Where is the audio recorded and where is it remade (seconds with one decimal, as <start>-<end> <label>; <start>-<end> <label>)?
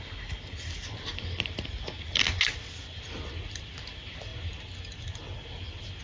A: 0.0-6.0 recorded